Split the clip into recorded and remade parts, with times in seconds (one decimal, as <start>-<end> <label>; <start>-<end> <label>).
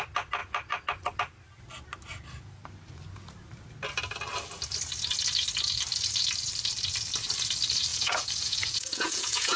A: 0.0-7.9 recorded; 7.9-9.6 remade